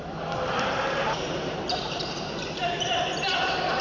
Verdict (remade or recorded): remade